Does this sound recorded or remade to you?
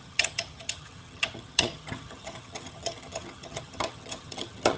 remade